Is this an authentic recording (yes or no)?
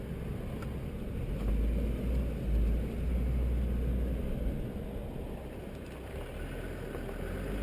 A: yes